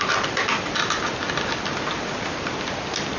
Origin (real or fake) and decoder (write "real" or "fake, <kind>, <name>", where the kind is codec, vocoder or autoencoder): real